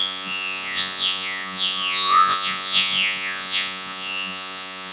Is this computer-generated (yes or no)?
yes